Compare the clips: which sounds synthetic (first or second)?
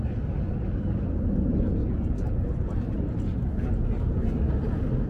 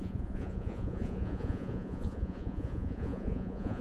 second